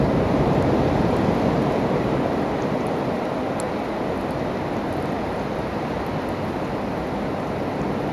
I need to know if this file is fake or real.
real